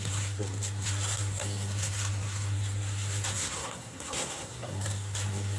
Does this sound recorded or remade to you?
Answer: remade